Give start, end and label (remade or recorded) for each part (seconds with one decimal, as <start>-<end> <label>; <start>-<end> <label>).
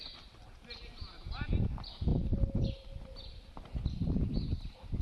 0.0-5.0 recorded